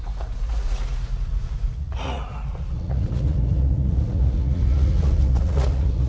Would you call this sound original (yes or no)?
no